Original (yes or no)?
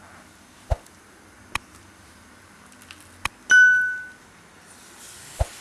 yes